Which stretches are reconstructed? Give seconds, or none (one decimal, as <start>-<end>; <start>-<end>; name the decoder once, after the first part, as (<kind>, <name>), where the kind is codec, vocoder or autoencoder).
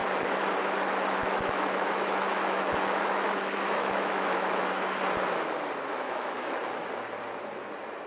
1.2-4.8 (autoencoder, DAC-VAE); 5.9-6.6